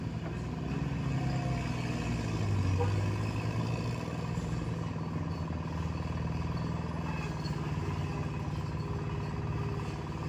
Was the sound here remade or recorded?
recorded